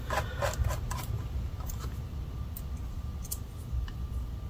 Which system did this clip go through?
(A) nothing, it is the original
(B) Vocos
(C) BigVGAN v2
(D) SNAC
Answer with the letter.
A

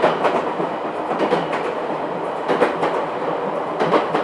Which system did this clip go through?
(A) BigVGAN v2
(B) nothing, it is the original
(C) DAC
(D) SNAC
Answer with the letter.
B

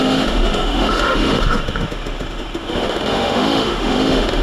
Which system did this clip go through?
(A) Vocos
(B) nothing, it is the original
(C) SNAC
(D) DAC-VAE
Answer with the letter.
D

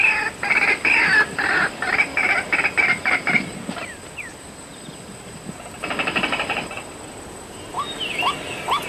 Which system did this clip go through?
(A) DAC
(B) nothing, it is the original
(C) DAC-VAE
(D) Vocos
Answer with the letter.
B